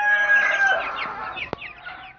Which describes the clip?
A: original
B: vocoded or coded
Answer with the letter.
A